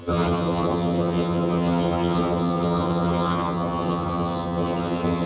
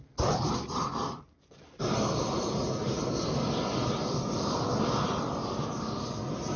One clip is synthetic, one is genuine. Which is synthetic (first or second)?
first